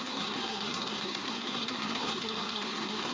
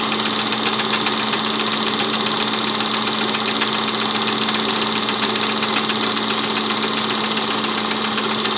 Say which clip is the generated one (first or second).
first